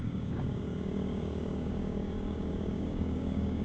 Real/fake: fake